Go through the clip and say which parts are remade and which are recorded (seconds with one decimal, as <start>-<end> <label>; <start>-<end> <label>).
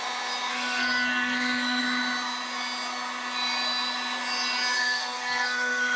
0.0-0.5 recorded; 0.5-1.8 remade; 1.8-4.8 recorded; 4.8-6.0 remade